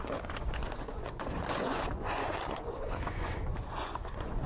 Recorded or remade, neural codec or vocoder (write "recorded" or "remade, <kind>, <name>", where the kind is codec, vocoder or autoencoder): remade, vocoder, Vocos